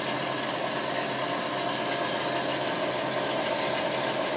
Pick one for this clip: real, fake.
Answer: real